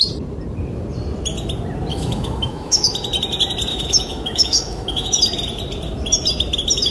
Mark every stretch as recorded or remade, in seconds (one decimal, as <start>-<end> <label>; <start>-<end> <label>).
0.0-1.9 recorded; 1.9-2.9 remade; 2.9-3.7 recorded; 3.7-5.2 remade; 5.2-6.9 recorded